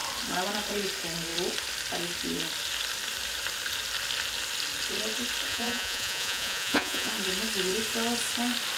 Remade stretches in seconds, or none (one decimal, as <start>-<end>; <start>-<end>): 5.5-7.1